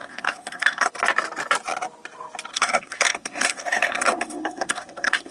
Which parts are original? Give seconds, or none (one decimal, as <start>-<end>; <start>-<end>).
0.9-2.5